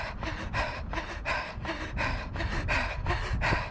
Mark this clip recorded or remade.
recorded